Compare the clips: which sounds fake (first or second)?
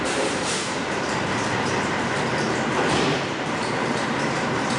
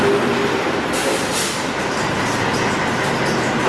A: first